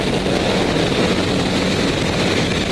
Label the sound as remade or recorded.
recorded